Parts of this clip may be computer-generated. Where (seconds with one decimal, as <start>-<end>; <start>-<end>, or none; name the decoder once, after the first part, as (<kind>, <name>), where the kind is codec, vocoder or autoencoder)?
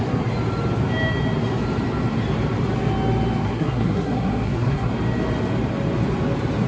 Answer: 3.4-4.9 (codec, SNAC)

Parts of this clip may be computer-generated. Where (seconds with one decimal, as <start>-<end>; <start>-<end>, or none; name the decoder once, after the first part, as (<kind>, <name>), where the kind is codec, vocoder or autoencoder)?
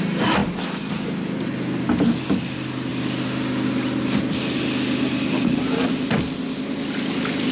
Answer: none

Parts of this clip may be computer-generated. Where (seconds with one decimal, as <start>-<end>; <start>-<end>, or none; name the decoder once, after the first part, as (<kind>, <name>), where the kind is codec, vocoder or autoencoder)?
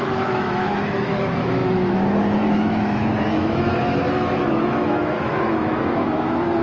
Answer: 0.0-6.6 (autoencoder, DAC-VAE)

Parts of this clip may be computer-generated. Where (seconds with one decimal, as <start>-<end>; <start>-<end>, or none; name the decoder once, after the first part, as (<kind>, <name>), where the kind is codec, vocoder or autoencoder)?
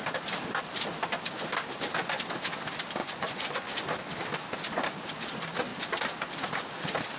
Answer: 3.0-3.7 (vocoder, Vocos)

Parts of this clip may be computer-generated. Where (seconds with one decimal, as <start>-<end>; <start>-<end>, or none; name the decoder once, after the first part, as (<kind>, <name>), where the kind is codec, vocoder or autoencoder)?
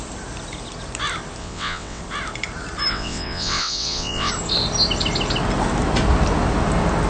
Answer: 1.4-2.0 (vocoder, WaveNeXt); 2.9-4.3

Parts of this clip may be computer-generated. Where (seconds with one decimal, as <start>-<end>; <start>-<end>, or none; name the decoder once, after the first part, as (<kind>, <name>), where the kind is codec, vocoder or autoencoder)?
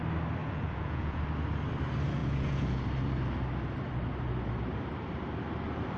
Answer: 0.4-1.2 (vocoder, Vocos); 2.2-2.8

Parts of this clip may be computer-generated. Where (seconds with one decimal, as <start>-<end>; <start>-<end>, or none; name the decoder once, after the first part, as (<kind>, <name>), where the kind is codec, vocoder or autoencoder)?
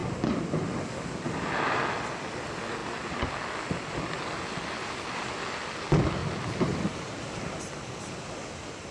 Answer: none